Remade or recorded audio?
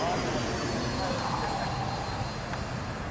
recorded